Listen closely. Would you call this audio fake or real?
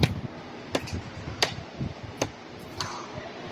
fake